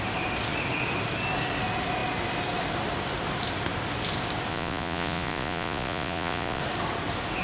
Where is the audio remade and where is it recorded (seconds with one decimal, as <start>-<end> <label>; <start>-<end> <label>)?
0.0-4.5 recorded; 4.5-6.6 remade; 6.6-7.4 recorded